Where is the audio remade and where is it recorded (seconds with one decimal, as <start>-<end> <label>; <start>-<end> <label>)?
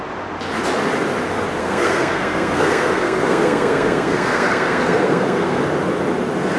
0.0-1.6 recorded; 1.6-5.6 remade; 5.6-6.6 recorded